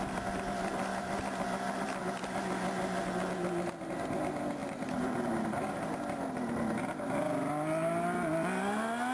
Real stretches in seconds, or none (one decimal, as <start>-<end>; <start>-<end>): 0.0-4.6; 5.3-9.1